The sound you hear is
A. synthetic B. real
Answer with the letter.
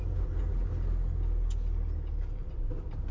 B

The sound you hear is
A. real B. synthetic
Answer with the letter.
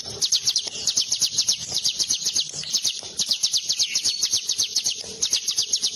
B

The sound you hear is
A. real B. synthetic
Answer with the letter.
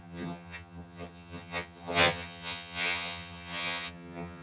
B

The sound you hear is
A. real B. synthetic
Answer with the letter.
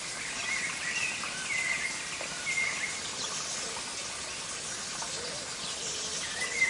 A